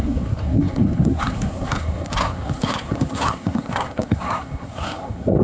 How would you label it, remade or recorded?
remade